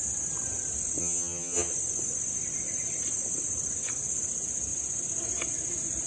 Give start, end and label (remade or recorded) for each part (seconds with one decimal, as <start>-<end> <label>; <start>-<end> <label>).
0.0-1.0 recorded; 1.0-1.7 remade; 1.7-6.1 recorded